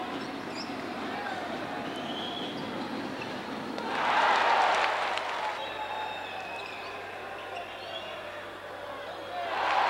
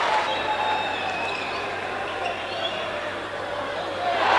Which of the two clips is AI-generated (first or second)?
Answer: second